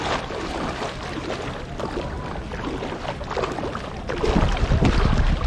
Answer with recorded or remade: recorded